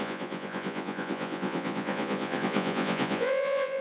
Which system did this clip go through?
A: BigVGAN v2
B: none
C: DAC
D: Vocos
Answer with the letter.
D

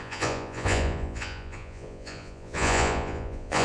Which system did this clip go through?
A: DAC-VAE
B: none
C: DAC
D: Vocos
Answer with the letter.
D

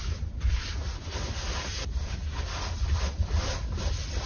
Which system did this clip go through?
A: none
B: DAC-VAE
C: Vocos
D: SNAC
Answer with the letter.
A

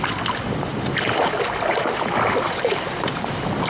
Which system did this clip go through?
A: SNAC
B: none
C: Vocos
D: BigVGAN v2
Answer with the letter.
B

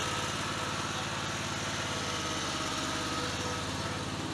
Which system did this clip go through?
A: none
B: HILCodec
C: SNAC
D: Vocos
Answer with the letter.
A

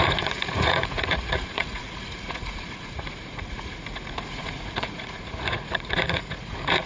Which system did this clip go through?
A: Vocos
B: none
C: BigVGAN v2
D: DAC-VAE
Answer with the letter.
A